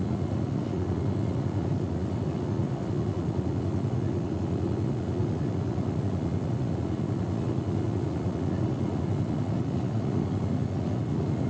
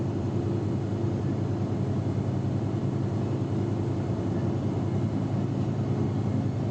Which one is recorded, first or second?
second